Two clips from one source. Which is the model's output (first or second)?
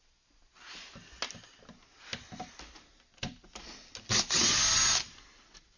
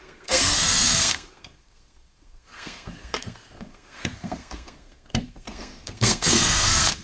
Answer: second